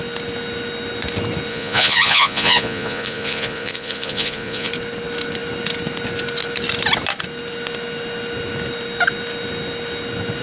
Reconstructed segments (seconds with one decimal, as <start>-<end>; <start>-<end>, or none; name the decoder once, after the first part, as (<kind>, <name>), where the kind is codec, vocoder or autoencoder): 1.5-4.7 (vocoder, Vocos)